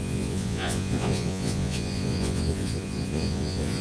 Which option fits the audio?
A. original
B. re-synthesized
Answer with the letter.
B